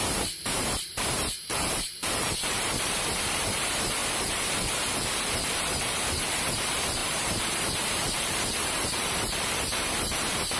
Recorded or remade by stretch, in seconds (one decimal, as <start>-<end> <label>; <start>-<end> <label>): 0.0-4.0 remade; 4.0-5.5 recorded; 5.5-10.6 remade